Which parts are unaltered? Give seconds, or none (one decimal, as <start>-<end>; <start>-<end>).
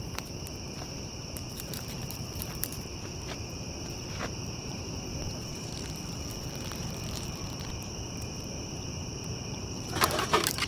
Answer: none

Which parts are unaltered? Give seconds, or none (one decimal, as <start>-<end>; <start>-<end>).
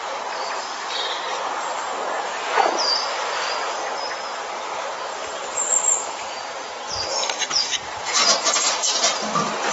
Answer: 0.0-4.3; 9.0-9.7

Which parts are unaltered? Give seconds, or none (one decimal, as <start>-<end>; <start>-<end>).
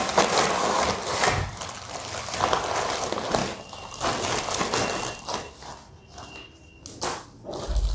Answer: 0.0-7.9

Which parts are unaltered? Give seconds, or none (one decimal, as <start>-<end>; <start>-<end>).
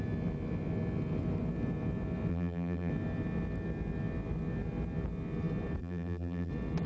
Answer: 0.0-2.3; 2.9-5.8; 6.5-6.9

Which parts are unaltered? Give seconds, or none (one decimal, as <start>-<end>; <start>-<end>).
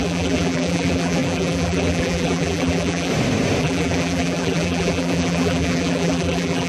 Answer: 3.1-3.6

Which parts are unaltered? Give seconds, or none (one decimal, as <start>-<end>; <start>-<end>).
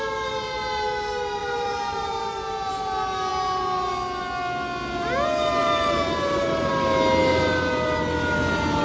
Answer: 0.0-1.4; 2.7-5.6; 6.7-7.3; 8.0-8.8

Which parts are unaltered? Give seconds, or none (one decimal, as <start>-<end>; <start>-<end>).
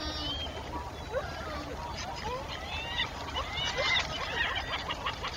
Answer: 0.0-5.4